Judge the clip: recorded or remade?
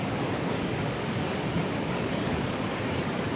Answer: remade